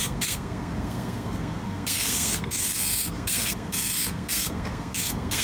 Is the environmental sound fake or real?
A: fake